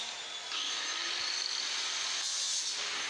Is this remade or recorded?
recorded